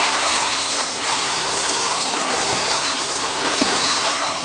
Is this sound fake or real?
fake